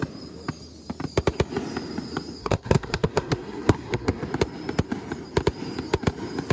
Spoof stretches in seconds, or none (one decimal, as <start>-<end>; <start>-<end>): 2.4-4.3